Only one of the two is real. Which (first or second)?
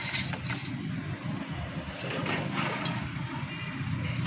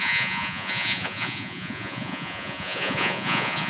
first